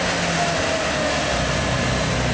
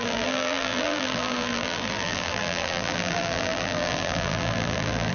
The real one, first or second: first